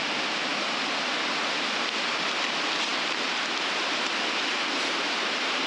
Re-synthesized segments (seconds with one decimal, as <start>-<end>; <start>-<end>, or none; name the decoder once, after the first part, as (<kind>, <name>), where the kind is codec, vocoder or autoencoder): none